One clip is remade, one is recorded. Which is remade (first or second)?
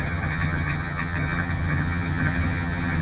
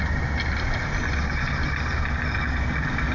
first